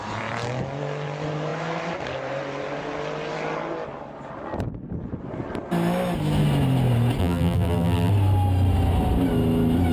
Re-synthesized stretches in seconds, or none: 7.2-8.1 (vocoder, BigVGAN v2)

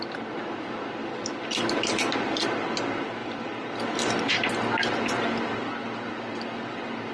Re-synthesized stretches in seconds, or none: 1.0-2.3 (vocoder, BigVGAN v2); 3.2-4.2

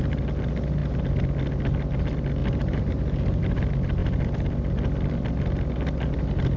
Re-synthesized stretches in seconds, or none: 2.4-3.4 (vocoder, BigVGAN v2)

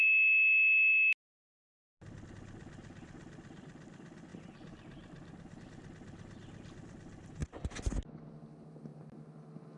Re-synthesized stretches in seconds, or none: none

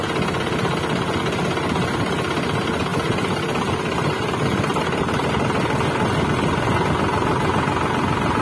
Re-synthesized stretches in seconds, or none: 2.9-4.3 (vocoder, BigVGAN v2); 4.7-5.2